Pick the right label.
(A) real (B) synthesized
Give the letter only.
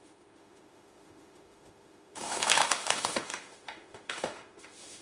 B